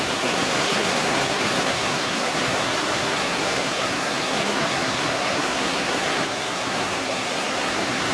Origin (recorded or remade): remade